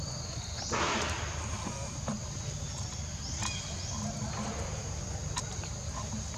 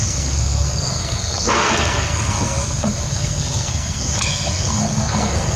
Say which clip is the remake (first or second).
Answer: second